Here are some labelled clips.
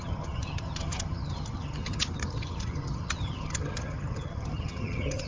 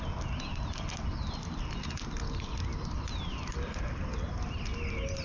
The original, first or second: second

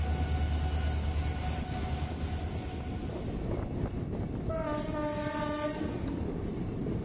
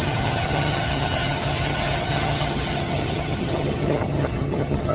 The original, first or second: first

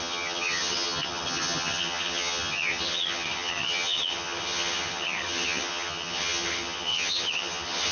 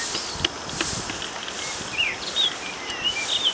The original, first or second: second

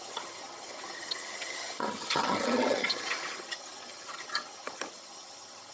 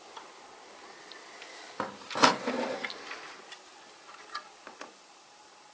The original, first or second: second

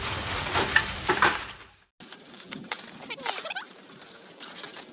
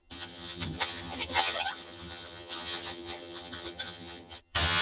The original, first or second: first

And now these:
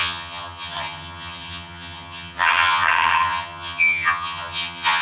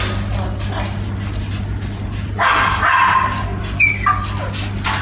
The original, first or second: second